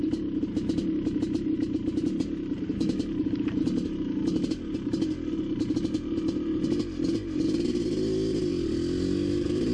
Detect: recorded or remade recorded